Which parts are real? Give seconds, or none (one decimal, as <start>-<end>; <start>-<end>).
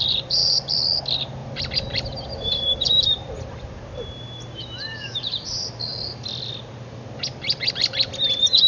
0.0-0.4; 1.0-1.4; 3.2-5.9; 6.5-8.7